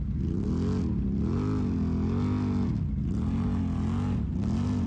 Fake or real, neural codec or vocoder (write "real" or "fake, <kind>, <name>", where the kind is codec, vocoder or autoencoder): real